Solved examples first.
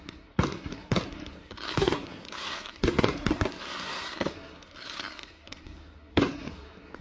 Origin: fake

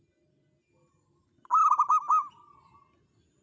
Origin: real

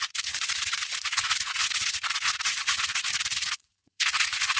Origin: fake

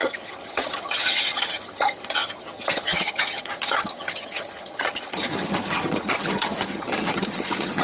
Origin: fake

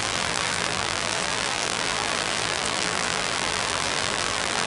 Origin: fake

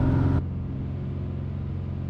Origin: real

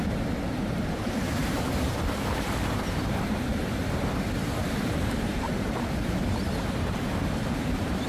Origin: fake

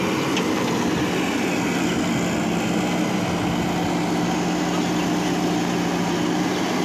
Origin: real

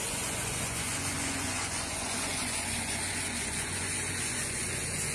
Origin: fake